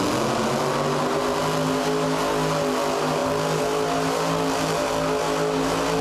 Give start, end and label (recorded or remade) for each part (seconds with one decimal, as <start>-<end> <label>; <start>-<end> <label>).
0.0-6.0 recorded